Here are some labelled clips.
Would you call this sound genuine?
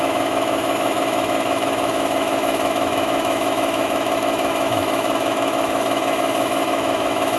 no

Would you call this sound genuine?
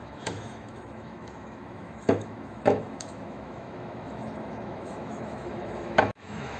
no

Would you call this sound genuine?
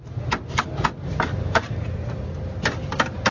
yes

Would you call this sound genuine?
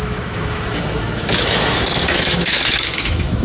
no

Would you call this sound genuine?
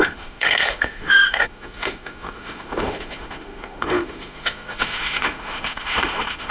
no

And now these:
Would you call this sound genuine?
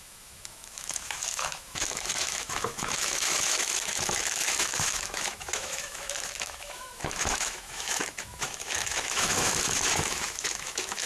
no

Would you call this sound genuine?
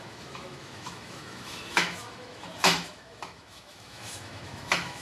no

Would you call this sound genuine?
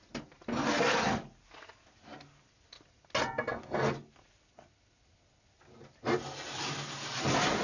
yes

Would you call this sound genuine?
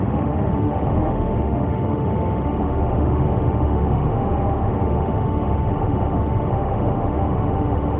no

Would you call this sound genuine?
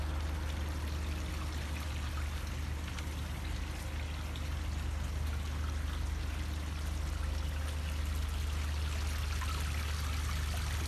yes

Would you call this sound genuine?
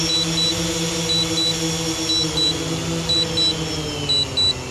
yes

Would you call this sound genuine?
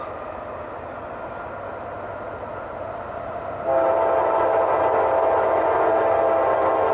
yes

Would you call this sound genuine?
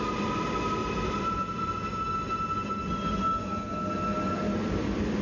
yes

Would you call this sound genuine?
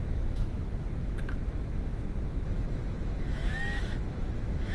no